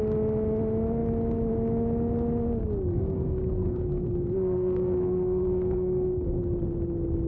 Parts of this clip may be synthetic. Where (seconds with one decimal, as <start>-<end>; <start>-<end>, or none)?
2.9-6.4